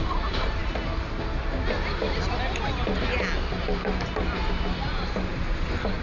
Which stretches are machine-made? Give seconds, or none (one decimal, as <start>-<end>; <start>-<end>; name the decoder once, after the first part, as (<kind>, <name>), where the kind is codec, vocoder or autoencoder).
none